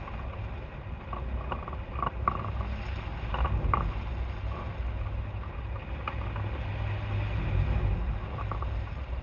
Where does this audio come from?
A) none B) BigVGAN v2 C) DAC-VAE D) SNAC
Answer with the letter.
A